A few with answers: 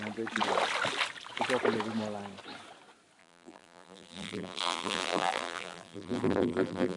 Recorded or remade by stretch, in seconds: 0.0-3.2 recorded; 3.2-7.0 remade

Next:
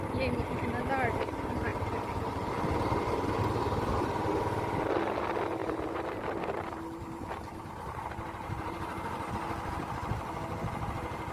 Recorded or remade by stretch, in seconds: 0.0-5.6 recorded; 5.6-9.3 remade; 9.3-11.3 recorded

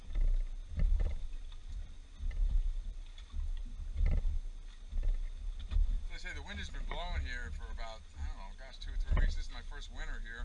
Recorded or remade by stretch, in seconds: 0.0-1.6 recorded; 1.6-3.6 remade; 3.6-10.4 recorded

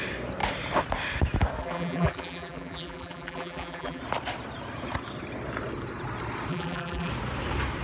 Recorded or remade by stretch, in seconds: 0.0-1.6 recorded; 1.6-4.0 remade; 4.0-6.5 recorded; 6.5-7.1 remade; 7.1-7.8 recorded